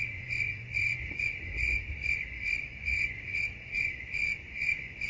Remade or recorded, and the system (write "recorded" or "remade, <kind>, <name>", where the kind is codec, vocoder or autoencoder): remade, vocoder, Vocos